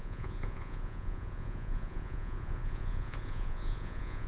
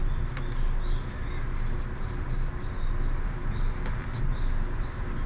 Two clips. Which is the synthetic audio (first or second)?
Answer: first